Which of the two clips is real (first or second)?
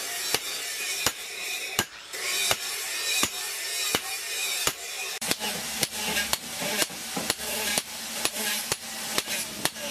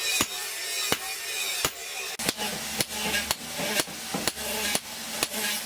second